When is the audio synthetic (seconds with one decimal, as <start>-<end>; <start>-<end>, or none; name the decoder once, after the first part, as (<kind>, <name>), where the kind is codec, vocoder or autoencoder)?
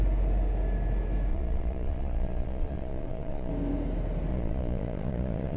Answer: 1.3-3.5 (vocoder, Vocos); 4.3-5.6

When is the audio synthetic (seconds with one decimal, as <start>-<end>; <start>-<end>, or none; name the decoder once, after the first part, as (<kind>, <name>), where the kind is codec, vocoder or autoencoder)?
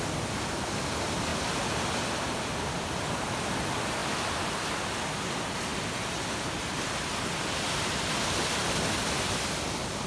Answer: none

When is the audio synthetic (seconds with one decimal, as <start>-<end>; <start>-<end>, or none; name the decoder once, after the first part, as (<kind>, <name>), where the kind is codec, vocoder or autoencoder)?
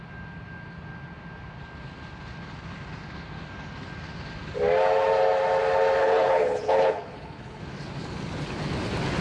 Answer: 6.0-7.6 (codec, HILCodec)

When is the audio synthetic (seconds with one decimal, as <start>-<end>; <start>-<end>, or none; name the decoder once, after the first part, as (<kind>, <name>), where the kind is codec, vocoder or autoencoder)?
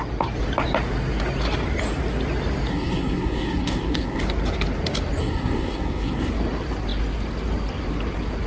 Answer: 2.7-4.2 (codec, SNAC); 5.2-6.3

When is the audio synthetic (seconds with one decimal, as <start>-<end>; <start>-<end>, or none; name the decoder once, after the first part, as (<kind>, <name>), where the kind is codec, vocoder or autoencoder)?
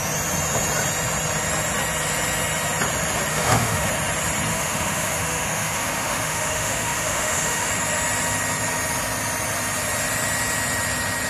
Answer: 3.3-3.9 (autoencoder, DAC-VAE); 4.5-7.7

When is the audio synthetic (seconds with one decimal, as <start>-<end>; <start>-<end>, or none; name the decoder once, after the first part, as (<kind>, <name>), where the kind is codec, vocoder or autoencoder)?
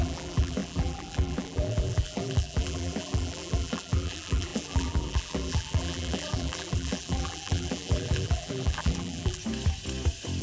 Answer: 0.0-9.4 (vocoder, BigVGAN v2)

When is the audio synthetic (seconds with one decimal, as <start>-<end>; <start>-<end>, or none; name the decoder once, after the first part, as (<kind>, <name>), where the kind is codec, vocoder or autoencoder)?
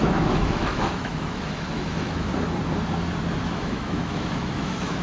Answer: 0.0-2.3 (autoencoder, DAC-VAE); 3.4-5.0